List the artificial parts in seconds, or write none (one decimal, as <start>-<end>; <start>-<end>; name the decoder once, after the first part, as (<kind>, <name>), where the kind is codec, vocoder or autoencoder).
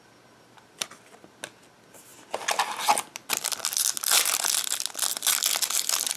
none